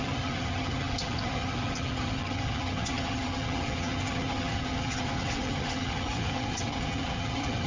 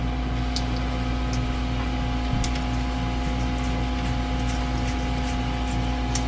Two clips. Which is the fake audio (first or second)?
first